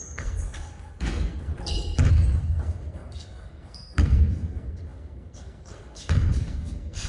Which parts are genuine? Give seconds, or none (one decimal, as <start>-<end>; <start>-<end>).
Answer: 1.5-2.1